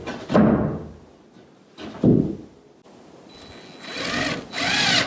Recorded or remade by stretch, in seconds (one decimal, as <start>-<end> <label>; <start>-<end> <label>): 0.0-5.1 recorded